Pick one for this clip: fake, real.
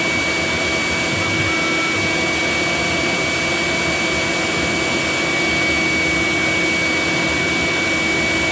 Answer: real